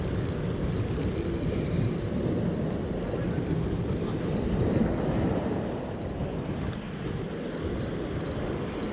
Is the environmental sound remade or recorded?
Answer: recorded